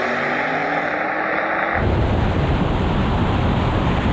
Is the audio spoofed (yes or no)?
no